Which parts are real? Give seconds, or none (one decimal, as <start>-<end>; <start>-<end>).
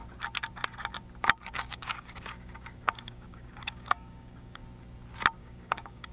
0.0-1.5; 4.6-5.4